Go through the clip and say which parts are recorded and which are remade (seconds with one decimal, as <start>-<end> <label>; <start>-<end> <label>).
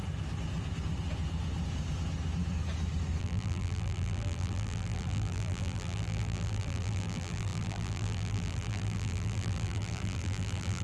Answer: 0.0-3.2 recorded; 3.2-10.8 remade